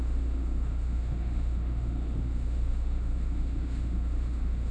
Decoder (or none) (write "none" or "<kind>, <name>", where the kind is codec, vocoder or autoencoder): autoencoder, DAC-VAE